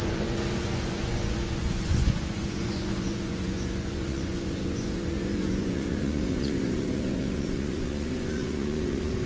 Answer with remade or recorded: remade